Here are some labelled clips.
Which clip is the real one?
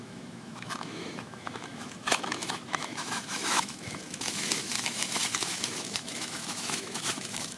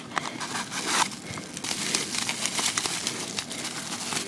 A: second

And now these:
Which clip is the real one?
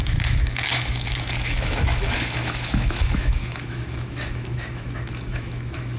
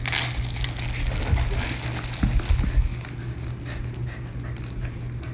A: second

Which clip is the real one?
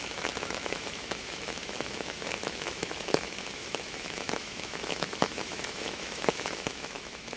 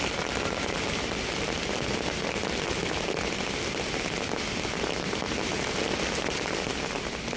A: second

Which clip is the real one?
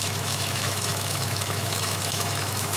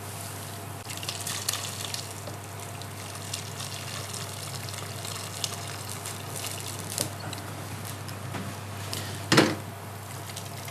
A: second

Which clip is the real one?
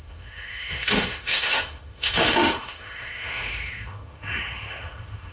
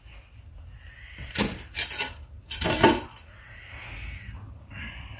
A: second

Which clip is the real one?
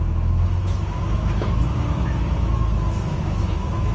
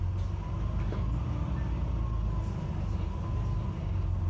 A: second